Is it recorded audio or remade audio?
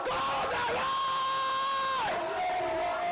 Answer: recorded